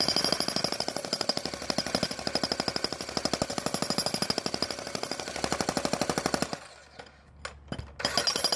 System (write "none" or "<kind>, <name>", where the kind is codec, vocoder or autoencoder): none